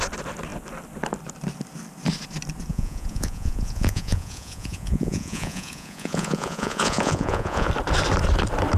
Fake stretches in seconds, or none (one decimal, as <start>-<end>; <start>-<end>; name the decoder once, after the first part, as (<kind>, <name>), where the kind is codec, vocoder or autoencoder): 2.7-7.7 (vocoder, Vocos)